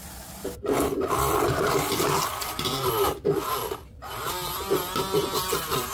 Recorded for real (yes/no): yes